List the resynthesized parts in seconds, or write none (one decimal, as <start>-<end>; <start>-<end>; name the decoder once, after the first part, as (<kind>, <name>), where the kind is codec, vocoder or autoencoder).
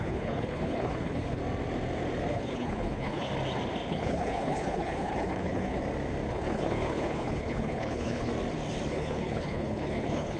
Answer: 0.0-1.4 (codec, HILCodec); 2.3-3.3; 3.9-5.8; 6.3-8.3; 8.9-10.4